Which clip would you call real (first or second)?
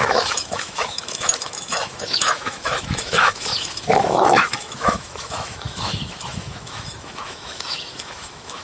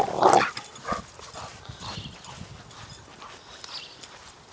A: second